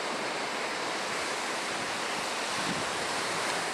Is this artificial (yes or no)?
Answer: no